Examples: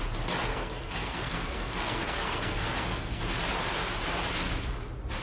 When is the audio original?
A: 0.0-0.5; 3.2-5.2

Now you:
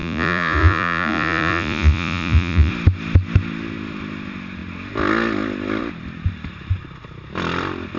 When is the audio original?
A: 2.7-8.0

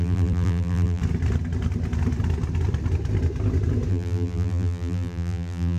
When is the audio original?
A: 1.0-3.9

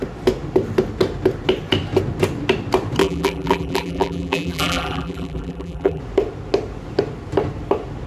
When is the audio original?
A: 0.0-3.0; 6.0-8.1